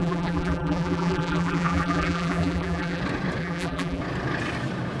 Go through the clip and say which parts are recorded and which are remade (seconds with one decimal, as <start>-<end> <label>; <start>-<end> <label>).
0.0-3.0 remade; 3.0-3.4 recorded; 3.4-4.0 remade; 4.0-5.0 recorded